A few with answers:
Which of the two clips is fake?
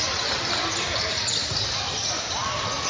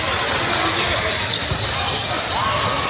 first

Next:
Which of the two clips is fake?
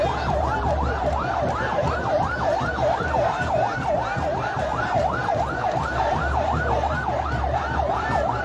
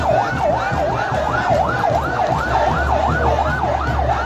first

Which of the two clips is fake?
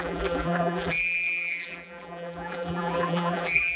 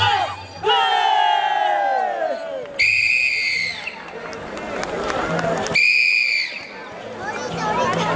first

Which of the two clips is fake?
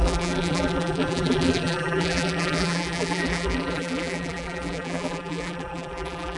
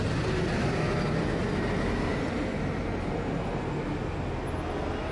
first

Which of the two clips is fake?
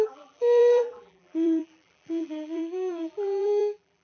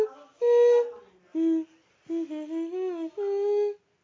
first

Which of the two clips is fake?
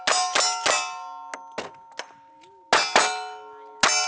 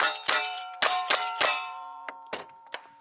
second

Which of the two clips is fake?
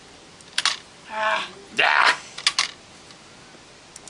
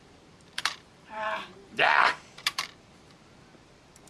second